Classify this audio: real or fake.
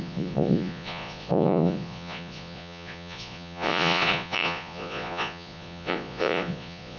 fake